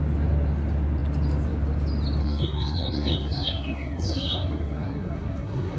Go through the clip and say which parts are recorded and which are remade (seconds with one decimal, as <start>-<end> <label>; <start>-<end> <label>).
0.0-2.2 recorded; 2.2-5.8 remade